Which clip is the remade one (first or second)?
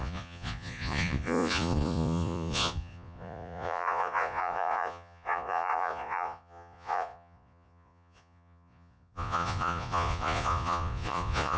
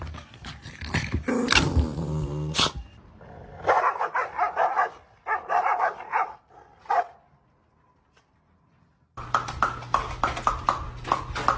first